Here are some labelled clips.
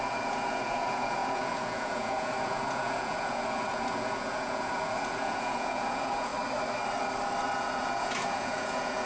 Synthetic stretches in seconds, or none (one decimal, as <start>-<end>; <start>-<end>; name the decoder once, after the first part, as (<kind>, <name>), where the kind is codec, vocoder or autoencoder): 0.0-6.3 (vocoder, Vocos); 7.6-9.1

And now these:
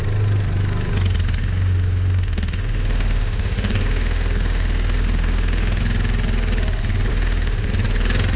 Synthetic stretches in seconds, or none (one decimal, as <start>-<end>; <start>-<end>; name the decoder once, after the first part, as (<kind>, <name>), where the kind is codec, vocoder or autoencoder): 1.4-5.8 (autoencoder, DAC-VAE); 7.1-7.7

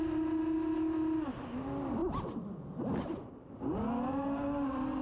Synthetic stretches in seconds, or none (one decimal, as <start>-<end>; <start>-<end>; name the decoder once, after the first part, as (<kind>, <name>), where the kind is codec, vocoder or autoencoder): none